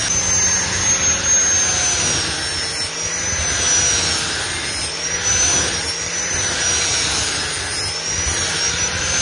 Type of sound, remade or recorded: recorded